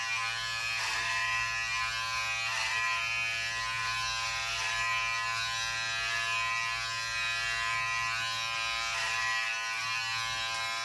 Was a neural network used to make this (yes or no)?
no